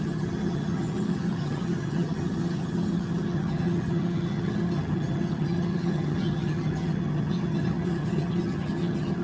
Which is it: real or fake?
fake